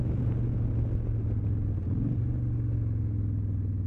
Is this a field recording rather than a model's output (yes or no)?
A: yes